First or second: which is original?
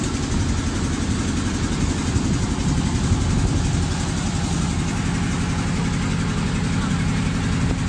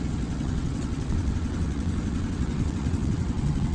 first